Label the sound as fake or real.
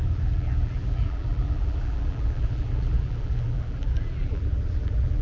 fake